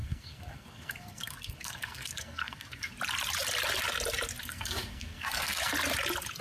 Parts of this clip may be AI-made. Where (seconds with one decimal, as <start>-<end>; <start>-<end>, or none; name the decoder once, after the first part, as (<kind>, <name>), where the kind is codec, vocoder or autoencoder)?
0.0-2.9 (codec, SNAC); 4.4-5.7